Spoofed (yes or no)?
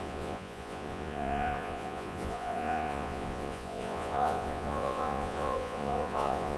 yes